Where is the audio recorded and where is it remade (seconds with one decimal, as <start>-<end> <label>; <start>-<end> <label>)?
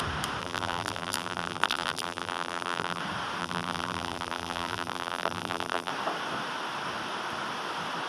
0.0-0.4 recorded; 0.4-3.0 remade; 3.0-3.4 recorded; 3.4-5.9 remade; 5.9-8.1 recorded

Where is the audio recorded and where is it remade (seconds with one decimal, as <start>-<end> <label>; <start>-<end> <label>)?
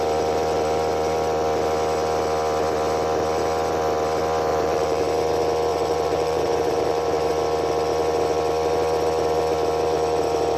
0.0-4.5 recorded; 4.5-5.0 remade; 5.0-5.7 recorded; 5.7-7.3 remade; 7.3-10.6 recorded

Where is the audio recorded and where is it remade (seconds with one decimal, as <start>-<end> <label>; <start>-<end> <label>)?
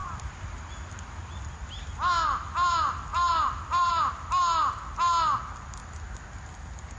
0.0-1.0 remade; 1.0-3.1 recorded; 3.1-4.1 remade; 4.1-7.0 recorded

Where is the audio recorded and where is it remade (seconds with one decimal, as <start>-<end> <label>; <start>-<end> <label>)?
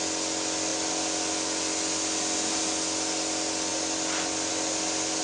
0.0-0.7 recorded; 0.7-2.6 remade; 2.6-5.2 recorded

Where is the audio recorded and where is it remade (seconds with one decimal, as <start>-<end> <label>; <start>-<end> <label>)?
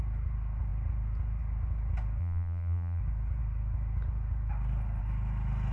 0.0-2.2 recorded; 2.2-3.0 remade; 3.0-5.7 recorded